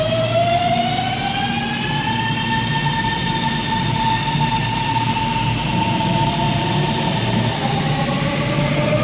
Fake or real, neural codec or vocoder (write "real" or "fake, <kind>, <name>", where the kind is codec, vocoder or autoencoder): real